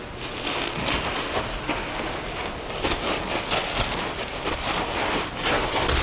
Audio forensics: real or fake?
real